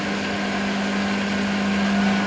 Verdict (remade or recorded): recorded